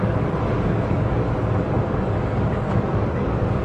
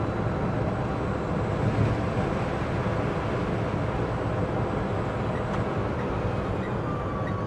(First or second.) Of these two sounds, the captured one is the second